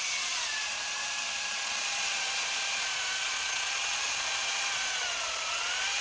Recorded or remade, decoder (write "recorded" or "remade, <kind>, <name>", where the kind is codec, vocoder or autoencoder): remade, vocoder, Vocos